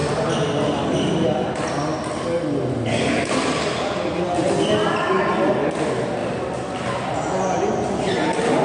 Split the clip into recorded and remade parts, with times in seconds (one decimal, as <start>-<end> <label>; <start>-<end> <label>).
0.0-8.6 recorded